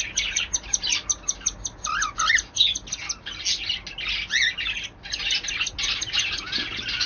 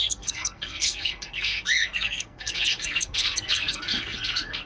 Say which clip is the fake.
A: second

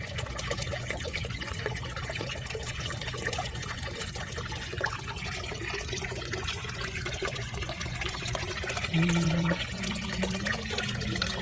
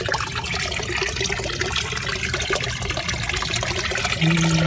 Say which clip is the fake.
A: first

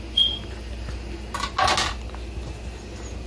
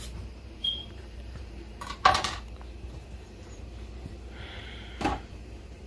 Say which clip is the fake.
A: second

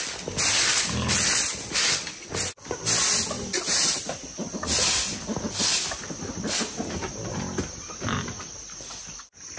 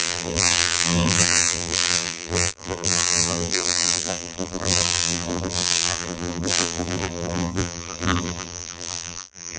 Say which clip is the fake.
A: second